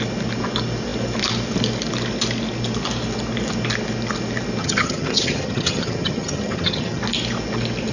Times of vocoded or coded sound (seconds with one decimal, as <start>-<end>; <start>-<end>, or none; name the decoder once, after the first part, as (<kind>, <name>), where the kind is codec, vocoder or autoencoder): 4.6-7.0 (vocoder, HiFi-GAN)